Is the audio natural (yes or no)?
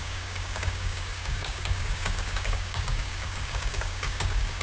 no